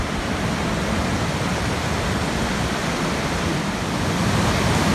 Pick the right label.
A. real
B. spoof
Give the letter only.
A